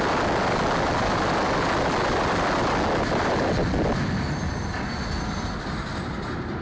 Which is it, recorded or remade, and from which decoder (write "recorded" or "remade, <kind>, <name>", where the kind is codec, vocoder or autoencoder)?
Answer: recorded